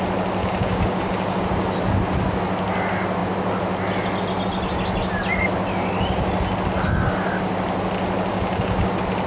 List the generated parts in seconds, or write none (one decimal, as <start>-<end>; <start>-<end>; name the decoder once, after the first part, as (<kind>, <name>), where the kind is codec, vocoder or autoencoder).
0.4-1.4 (codec, DAC); 8.3-8.9